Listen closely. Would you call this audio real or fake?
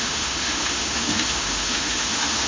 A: fake